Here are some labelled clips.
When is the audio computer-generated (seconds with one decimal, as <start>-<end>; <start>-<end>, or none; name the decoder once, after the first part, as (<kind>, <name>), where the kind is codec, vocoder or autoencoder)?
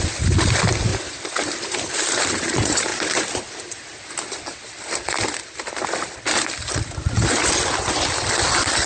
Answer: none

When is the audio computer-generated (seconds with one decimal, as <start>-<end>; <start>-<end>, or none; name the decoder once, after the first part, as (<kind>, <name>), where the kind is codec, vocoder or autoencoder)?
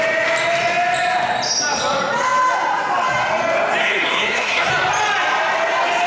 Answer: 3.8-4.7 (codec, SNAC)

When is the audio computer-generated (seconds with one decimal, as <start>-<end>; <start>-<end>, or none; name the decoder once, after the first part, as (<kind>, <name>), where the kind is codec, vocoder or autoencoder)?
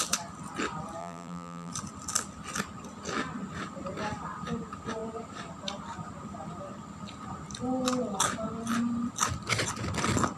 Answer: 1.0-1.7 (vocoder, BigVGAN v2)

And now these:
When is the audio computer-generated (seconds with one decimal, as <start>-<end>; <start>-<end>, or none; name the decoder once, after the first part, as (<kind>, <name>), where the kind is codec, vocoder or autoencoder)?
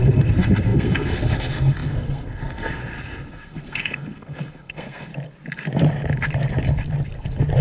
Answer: 0.0-2.8 (codec, SNAC); 3.3-5.1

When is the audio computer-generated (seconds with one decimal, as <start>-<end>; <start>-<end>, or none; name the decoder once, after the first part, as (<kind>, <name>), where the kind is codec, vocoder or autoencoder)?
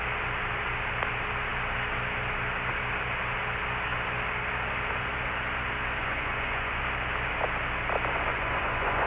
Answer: 6.0-6.8 (vocoder, Vocos); 8.3-9.1